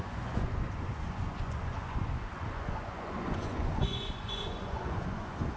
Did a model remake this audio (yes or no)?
yes